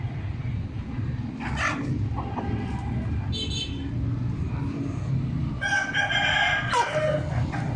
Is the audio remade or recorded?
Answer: recorded